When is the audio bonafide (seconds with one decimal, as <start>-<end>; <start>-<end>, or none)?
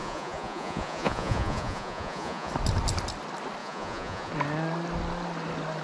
2.5-3.6; 4.3-5.8